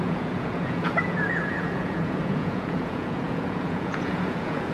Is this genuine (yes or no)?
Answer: no